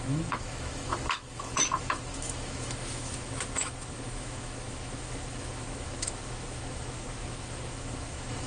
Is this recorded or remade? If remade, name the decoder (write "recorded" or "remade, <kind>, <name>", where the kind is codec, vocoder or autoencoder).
remade, autoencoder, DAC-VAE